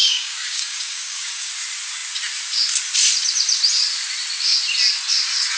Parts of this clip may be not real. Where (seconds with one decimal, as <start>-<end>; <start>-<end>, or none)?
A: 0.0-1.5